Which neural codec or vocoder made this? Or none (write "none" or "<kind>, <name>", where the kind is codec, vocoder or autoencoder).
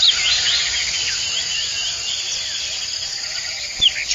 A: none